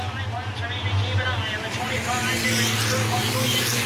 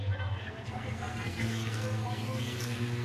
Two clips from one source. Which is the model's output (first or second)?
second